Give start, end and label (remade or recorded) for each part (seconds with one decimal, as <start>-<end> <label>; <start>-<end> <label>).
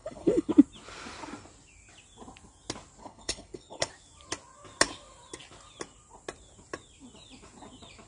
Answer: 0.0-0.5 remade; 0.5-3.0 recorded; 3.0-3.9 remade; 3.9-8.1 recorded